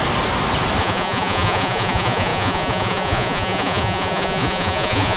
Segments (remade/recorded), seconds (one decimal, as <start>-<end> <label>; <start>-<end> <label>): 0.0-0.8 recorded; 0.8-5.2 remade